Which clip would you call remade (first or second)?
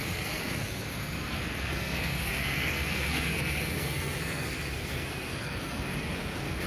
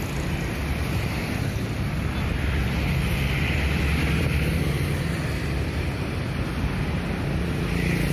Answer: first